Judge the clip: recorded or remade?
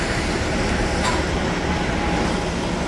recorded